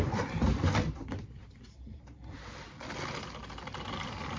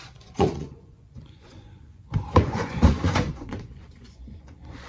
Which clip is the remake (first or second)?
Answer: second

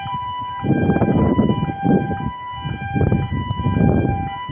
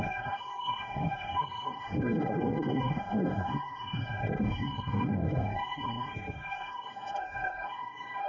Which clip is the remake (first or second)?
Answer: second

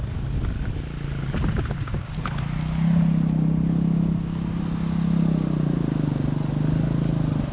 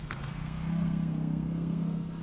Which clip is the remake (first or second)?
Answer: second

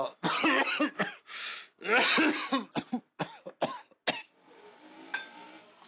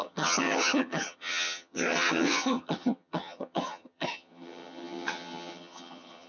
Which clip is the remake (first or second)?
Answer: second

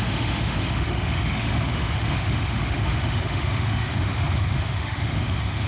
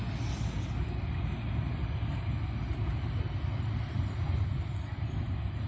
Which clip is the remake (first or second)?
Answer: first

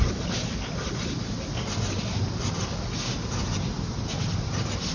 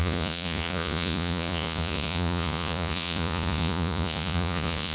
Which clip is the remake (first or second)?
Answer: second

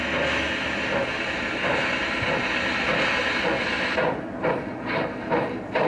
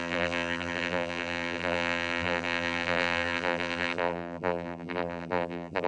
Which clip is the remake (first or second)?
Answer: second